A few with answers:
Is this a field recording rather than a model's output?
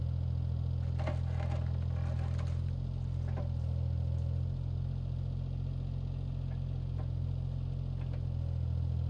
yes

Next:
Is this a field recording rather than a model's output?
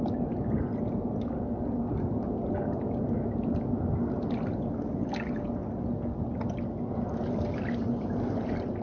yes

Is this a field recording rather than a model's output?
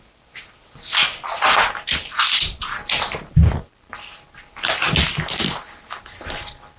yes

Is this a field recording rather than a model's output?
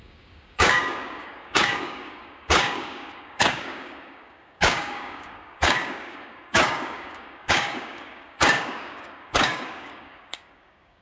no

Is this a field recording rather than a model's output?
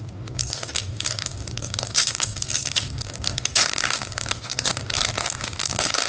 no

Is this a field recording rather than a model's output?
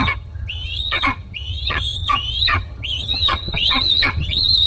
no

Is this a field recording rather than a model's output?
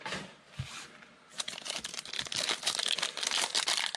no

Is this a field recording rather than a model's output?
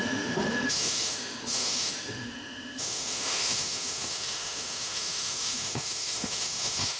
no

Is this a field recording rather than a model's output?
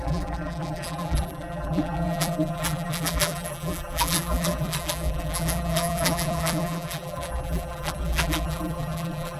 no